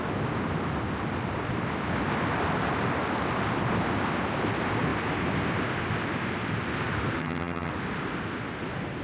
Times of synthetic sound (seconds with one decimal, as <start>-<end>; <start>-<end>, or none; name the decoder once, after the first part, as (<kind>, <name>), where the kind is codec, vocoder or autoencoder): 7.2-7.7 (vocoder, HiFi-GAN)